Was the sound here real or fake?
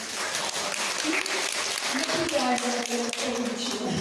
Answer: real